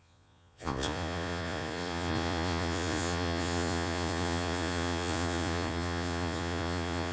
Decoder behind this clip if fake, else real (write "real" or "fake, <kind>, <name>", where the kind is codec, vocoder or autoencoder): fake, vocoder, Vocos